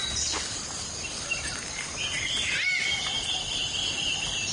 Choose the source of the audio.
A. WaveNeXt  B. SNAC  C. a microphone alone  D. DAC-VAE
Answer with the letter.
C